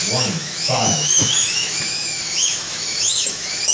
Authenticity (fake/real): fake